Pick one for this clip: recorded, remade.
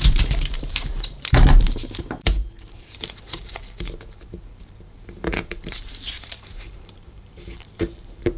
remade